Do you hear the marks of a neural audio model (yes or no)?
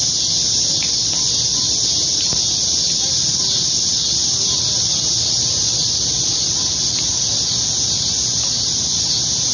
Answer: no